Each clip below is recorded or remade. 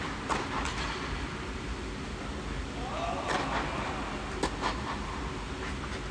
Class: recorded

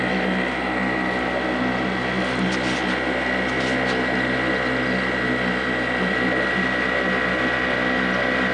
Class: recorded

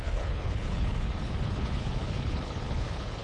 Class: remade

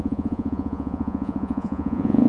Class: remade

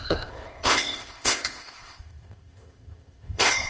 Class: remade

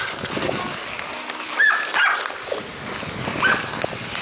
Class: recorded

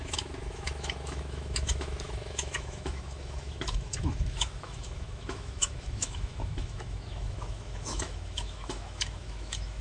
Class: remade